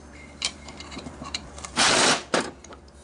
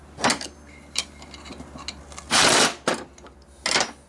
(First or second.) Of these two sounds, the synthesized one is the first